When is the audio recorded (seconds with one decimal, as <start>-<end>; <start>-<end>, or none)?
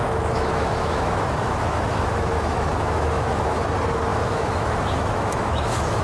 3.6-4.1